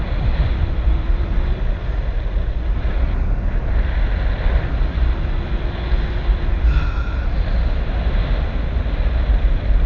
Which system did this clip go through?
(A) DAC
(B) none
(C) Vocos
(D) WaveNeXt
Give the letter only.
B